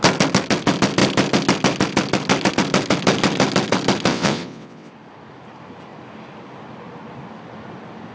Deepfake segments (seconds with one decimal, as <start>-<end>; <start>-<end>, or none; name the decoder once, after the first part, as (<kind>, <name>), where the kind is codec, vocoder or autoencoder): 4.1-4.9 (vocoder, WaveNeXt)